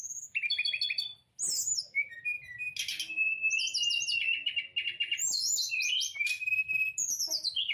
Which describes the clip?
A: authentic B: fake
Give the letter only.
A